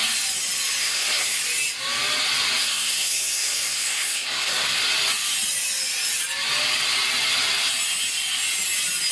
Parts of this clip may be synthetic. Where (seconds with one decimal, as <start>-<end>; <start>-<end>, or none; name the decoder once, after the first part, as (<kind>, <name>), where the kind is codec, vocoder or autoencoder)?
0.8-1.4 (codec, SNAC); 2.6-4.8